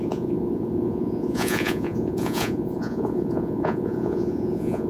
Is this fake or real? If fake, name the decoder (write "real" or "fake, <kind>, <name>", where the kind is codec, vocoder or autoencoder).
fake, vocoder, Vocos